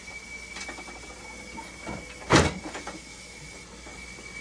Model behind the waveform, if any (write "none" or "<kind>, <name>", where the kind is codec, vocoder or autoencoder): none